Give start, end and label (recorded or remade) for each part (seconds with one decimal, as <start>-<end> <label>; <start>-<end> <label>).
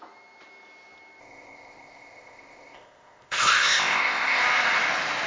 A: 0.0-1.2 recorded; 1.2-4.4 remade; 4.4-5.3 recorded